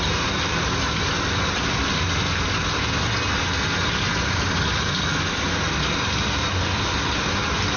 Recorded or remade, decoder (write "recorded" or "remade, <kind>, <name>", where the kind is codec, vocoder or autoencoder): recorded